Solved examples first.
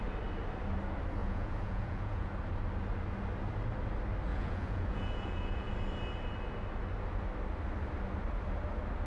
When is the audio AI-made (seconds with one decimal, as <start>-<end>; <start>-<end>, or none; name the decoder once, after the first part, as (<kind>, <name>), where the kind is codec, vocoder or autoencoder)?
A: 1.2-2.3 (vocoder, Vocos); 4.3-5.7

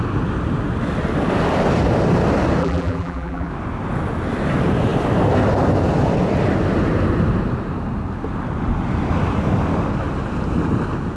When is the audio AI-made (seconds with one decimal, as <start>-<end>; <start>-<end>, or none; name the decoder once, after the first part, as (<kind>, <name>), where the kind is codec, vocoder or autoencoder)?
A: 2.6-3.5 (vocoder, BigVGAN v2)

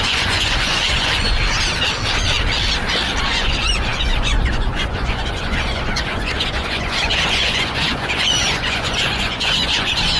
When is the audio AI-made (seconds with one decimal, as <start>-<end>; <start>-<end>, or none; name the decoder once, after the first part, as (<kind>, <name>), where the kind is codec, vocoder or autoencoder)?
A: 0.0-1.4 (vocoder, Vocos); 3.2-10.2

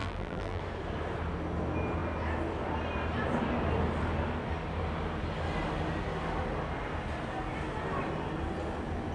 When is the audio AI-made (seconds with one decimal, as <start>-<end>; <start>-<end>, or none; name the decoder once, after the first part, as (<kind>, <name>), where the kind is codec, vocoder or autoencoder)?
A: 0.0-0.6 (vocoder, BigVGAN v2)